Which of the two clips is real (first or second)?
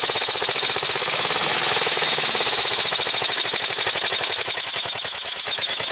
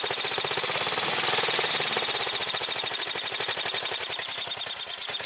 second